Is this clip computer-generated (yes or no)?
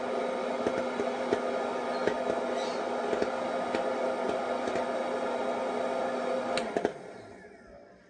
no